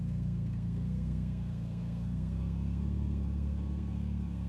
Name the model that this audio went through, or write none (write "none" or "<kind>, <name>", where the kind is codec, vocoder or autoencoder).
codec, SNAC